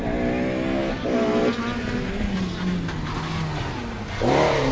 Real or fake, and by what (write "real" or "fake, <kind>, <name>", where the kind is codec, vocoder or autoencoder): real